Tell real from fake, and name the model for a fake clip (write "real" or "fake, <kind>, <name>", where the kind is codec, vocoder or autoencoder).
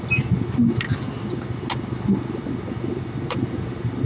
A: real